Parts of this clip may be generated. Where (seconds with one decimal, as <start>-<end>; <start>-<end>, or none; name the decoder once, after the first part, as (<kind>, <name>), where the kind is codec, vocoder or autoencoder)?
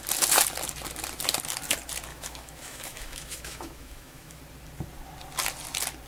2.1-4.4 (autoencoder, DAC-VAE)